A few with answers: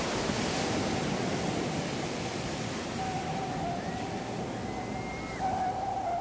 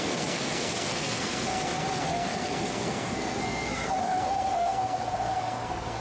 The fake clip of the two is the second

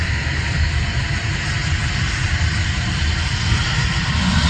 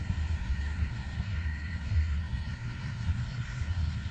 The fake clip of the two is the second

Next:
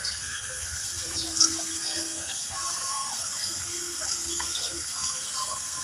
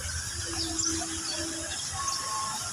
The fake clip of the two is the first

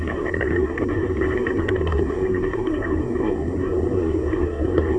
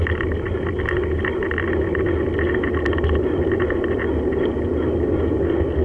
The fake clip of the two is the first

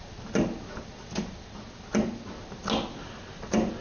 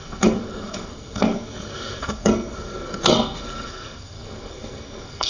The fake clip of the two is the second